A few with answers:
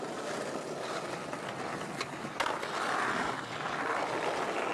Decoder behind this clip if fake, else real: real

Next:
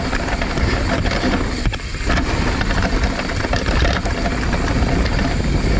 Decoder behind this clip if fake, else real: real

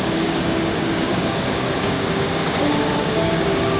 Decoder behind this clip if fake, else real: fake, codec, DAC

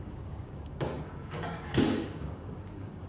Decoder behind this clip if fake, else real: fake, codec, DAC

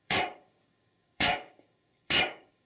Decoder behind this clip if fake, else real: fake, codec, DAC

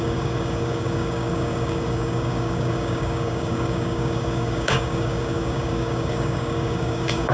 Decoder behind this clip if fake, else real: fake, codec, DAC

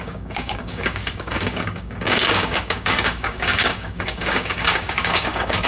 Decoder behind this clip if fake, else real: fake, codec, DAC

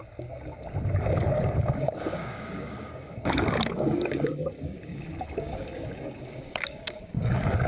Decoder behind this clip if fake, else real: fake, codec, DAC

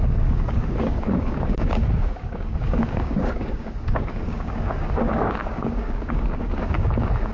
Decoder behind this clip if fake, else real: fake, codec, DAC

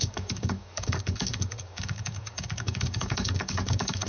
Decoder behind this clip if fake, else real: fake, codec, DAC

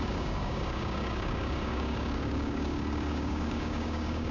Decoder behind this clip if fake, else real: fake, codec, DAC